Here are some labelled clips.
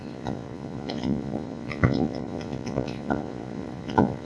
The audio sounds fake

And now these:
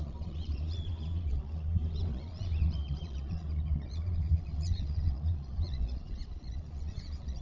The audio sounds fake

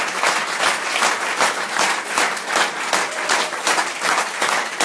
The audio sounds real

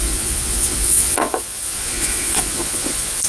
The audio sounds fake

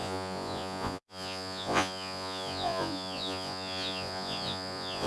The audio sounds fake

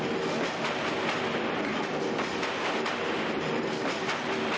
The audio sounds real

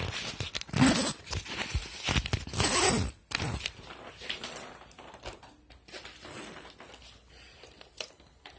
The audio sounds real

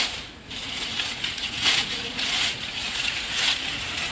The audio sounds fake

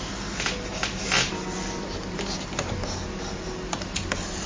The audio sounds real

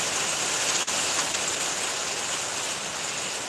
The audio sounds real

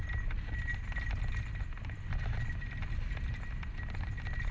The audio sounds real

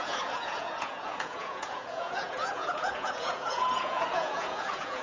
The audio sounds fake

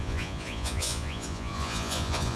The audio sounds fake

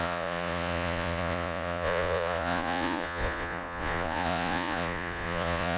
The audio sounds fake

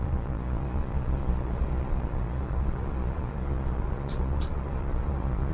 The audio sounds fake